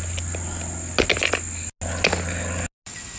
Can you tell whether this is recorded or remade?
recorded